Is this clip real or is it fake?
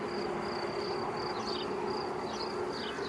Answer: real